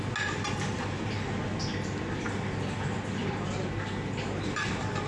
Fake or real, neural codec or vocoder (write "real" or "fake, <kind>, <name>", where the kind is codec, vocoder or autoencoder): real